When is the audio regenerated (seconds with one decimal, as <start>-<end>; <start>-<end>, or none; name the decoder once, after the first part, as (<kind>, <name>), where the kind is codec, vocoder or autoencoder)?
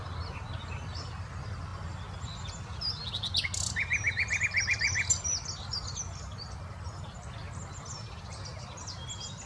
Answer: none